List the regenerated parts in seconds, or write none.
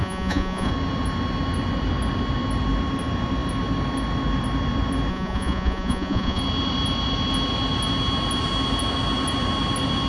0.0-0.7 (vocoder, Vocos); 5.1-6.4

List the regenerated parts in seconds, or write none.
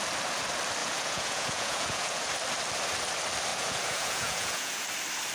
0.8-2.3 (vocoder, Vocos); 3.5-4.8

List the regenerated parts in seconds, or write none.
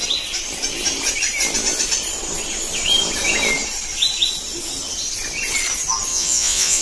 6.1-6.8 (vocoder, Vocos)